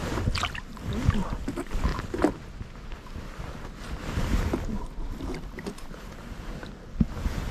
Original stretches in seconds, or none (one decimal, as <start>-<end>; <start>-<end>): 0.0-7.5